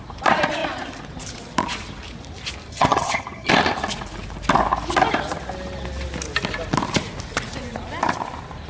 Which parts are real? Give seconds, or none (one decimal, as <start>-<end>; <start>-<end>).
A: 0.0-2.7; 3.5-8.7